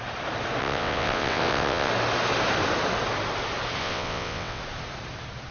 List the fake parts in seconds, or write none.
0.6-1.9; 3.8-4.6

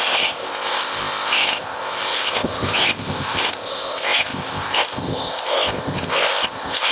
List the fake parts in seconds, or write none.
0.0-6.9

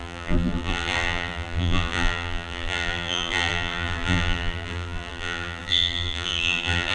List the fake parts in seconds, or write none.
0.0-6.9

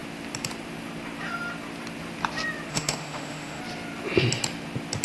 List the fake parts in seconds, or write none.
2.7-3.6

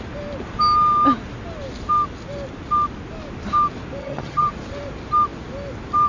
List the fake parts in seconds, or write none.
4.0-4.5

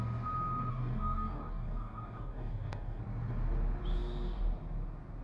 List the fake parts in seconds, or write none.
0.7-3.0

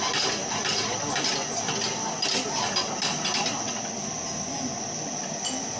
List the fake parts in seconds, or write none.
none